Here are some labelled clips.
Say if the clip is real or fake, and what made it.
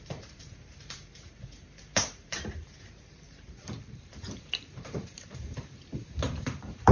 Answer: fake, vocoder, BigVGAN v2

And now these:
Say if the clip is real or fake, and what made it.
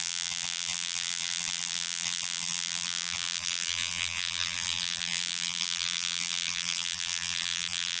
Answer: fake, vocoder, BigVGAN v2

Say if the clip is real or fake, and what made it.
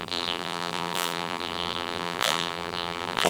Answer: fake, vocoder, BigVGAN v2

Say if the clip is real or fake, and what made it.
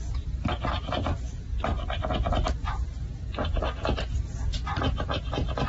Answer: real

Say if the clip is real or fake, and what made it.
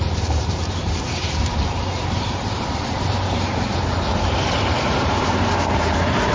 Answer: fake, vocoder, BigVGAN v2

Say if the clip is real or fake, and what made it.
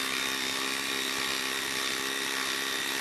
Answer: fake, vocoder, BigVGAN v2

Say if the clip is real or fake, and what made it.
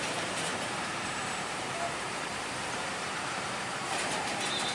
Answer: fake, vocoder, BigVGAN v2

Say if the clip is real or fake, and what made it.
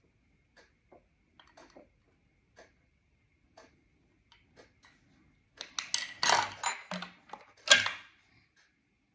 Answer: real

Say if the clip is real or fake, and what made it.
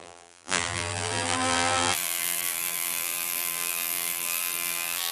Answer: fake, vocoder, BigVGAN v2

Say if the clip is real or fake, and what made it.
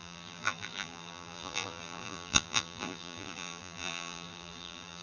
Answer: fake, vocoder, BigVGAN v2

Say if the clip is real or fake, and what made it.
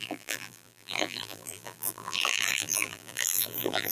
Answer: fake, vocoder, BigVGAN v2